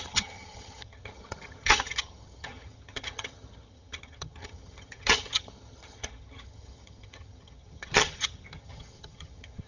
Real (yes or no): no